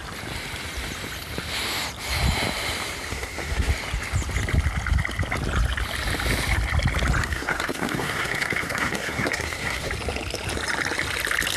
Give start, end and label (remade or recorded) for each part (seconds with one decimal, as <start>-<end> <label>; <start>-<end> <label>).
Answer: 0.0-3.1 recorded; 3.1-3.7 remade; 3.7-7.2 recorded; 7.2-9.9 remade; 9.9-11.6 recorded